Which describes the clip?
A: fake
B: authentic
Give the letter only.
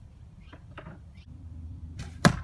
A